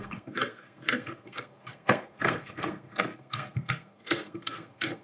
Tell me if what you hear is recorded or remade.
remade